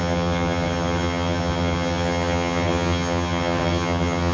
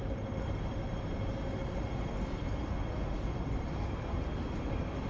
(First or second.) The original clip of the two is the second